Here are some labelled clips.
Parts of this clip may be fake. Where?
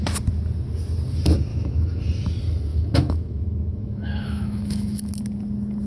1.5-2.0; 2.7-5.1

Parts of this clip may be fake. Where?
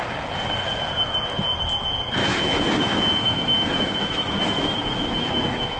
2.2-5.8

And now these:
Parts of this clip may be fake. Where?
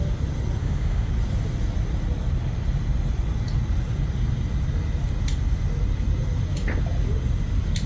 0.6-1.1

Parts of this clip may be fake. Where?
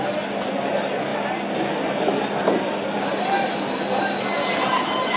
none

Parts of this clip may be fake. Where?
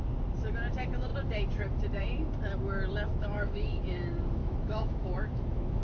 3.1-3.8; 4.4-5.8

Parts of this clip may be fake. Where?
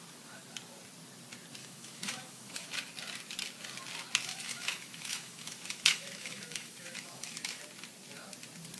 1.6-2.7; 4.3-7.6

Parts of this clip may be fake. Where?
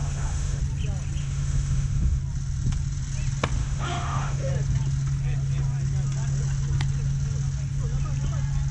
0.0-0.6; 1.2-2.2; 3.6-4.5